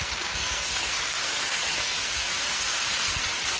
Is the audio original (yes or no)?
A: no